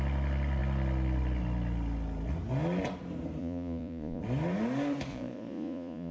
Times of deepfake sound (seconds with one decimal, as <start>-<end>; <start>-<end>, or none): 3.4-4.2; 5.1-6.1